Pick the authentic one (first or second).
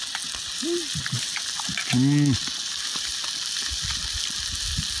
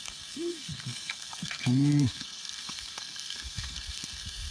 first